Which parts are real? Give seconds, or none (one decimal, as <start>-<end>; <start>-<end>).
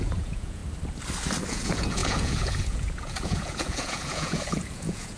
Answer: 0.6-1.5